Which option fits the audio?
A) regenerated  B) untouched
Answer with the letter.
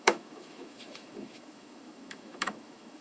A